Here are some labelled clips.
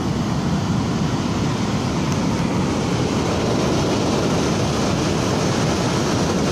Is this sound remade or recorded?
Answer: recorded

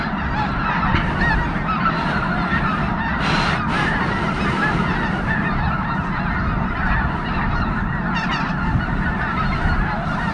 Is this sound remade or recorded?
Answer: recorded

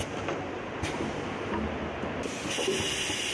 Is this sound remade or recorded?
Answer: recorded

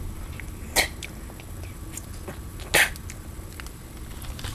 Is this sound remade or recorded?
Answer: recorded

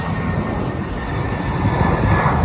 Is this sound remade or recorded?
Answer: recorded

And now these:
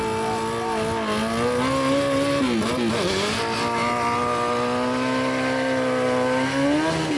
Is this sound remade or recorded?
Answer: recorded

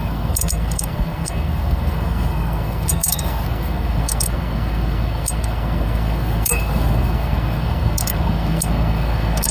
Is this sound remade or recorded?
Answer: remade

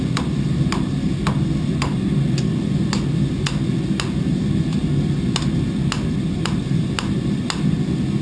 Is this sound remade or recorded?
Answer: recorded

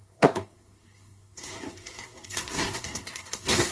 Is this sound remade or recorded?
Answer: remade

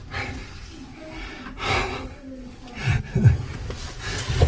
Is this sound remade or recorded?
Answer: recorded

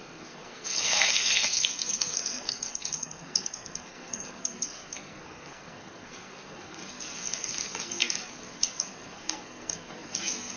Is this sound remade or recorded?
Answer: remade